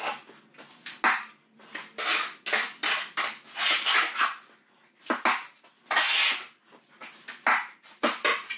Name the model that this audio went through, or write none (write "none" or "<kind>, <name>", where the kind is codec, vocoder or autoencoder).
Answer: none